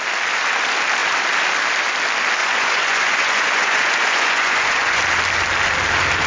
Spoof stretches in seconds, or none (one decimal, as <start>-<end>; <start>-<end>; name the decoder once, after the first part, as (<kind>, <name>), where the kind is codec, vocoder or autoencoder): 2.4-5.0 (vocoder, Vocos)